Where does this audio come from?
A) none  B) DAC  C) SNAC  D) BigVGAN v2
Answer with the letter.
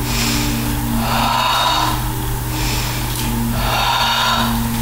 A